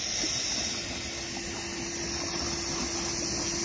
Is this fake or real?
real